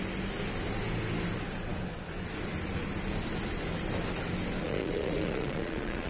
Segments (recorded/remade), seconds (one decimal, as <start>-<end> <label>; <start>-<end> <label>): 0.0-4.6 recorded; 4.6-6.1 remade